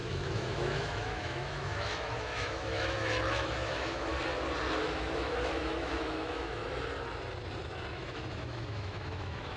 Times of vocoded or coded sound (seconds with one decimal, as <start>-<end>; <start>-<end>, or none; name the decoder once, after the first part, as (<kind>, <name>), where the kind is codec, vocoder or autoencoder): 0.0-4.1 (autoencoder, DAC-VAE); 4.8-6.6; 7.9-9.6